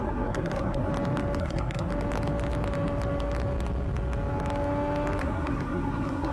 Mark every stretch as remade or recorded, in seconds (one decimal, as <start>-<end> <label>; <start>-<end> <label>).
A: 0.0-0.9 remade; 0.9-1.4 recorded; 1.4-1.9 remade; 1.9-5.2 recorded; 5.2-6.3 remade